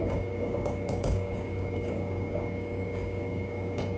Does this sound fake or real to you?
fake